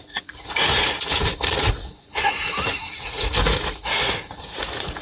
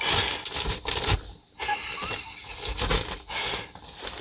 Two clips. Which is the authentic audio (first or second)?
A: second